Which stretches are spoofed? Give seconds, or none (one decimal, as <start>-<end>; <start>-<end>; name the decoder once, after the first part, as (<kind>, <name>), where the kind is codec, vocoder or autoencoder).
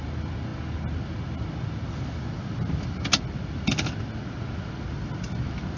none